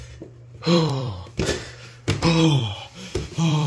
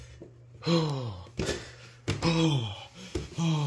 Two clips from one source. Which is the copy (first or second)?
first